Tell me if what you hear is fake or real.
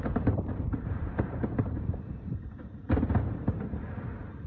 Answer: fake